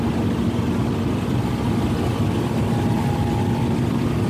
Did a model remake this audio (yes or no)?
no